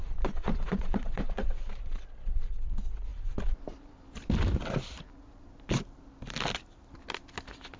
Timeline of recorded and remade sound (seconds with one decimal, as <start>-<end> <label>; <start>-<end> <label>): 0.0-2.6 remade; 2.6-7.8 recorded